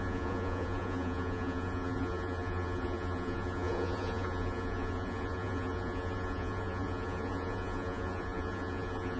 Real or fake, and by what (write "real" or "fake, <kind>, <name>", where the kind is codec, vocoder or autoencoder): fake, vocoder, Vocos